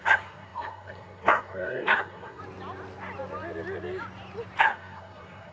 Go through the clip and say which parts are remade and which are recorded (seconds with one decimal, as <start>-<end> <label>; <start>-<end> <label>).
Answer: 0.0-2.4 remade; 2.4-4.6 recorded; 4.6-5.5 remade

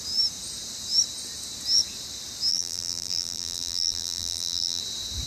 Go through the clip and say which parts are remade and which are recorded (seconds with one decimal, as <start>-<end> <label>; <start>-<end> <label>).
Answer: 0.0-2.5 recorded; 2.5-4.8 remade; 4.8-5.3 recorded

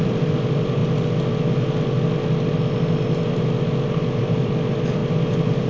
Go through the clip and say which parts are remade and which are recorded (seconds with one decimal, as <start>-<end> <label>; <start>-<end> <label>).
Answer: 0.0-0.8 remade; 0.8-4.2 recorded; 4.2-5.0 remade; 5.0-5.7 recorded